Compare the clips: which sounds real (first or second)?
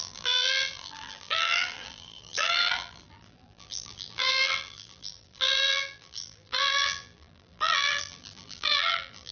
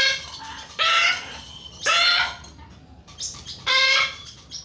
second